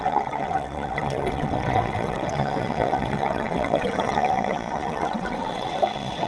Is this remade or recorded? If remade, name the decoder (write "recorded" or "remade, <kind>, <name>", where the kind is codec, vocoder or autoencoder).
remade, vocoder, WaveNeXt